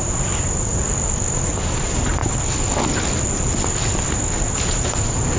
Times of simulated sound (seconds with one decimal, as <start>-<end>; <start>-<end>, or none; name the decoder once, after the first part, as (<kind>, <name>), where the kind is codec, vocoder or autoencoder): 0.0-0.8 (vocoder, BigVGAN v2); 1.5-2.2; 4.5-5.4